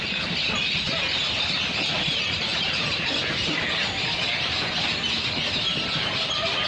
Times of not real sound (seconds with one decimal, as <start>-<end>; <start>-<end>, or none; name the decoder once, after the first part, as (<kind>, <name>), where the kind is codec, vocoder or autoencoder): none